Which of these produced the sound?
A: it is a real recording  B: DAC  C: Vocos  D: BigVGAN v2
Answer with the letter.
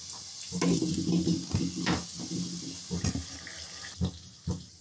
A